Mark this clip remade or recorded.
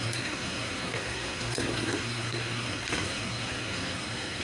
remade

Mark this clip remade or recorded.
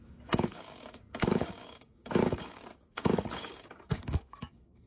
remade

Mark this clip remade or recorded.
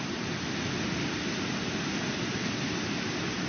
remade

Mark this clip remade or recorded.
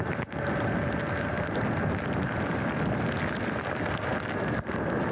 recorded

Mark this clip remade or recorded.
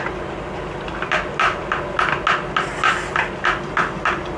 recorded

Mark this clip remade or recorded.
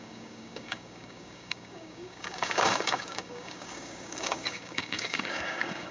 remade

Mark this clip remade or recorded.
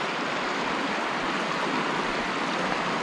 recorded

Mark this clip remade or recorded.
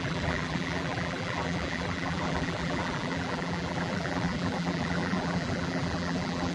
remade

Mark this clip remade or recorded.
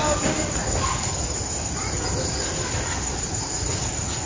recorded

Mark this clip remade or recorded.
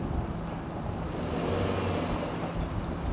recorded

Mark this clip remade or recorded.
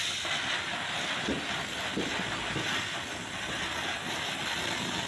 recorded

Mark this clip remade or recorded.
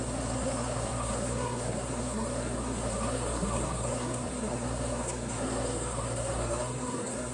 remade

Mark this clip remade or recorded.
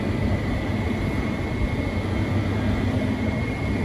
recorded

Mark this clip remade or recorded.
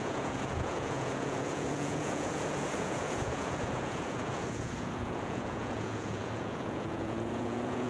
remade